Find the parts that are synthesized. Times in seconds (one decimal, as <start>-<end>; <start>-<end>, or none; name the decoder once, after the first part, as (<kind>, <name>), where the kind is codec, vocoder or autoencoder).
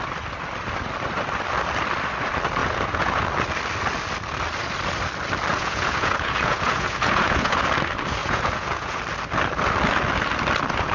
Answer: 2.6-3.2 (vocoder, Vocos); 5.5-7.6; 8.2-9.0